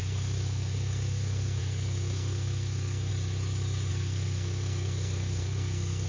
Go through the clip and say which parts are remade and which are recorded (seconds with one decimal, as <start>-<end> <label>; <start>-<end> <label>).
0.0-3.1 remade; 3.1-3.9 recorded; 3.9-6.1 remade